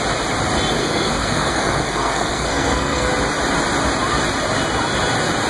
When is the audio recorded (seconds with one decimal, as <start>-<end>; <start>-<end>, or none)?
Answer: 0.0-0.8; 3.1-5.5